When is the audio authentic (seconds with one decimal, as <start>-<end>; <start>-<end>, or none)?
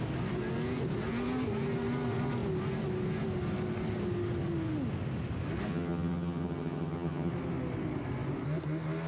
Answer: 0.0-5.7; 7.3-9.1